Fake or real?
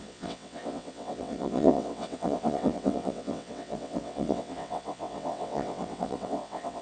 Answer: fake